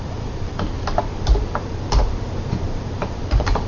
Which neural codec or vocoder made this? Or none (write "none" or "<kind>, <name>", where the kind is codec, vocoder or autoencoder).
vocoder, BigVGAN v2